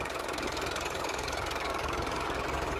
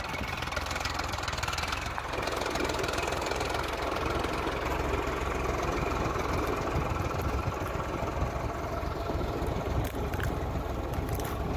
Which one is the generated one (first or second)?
first